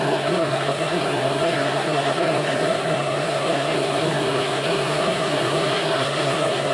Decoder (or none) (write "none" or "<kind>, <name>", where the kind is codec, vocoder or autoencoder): codec, SNAC